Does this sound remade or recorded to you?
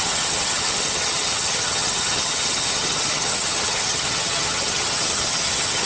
remade